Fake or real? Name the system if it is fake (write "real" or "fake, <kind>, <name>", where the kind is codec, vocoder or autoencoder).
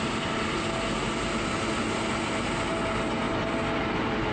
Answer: real